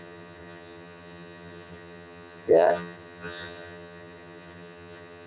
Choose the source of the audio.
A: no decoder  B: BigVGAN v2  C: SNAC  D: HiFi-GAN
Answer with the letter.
D